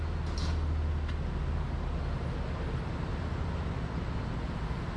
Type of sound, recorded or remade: recorded